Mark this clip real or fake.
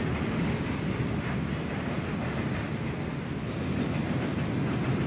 real